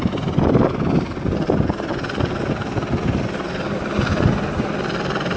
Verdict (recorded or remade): recorded